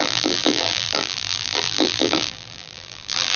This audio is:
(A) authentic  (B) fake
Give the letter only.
B